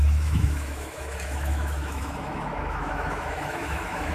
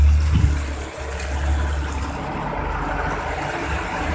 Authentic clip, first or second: second